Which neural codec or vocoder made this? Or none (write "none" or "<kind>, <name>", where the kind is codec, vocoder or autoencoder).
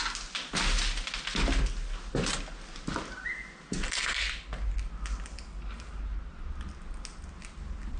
none